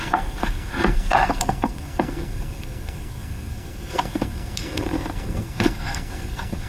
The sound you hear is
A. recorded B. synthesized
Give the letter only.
B